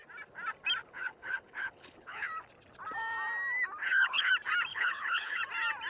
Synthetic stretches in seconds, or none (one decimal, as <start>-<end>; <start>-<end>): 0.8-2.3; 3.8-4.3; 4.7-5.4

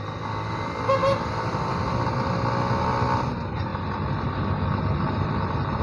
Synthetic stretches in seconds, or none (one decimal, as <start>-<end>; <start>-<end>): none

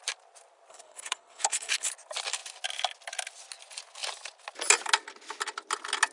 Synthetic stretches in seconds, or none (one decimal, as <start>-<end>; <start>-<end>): 0.7-1.9

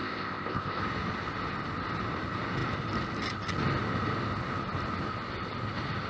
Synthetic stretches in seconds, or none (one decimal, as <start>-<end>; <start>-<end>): 0.0-0.8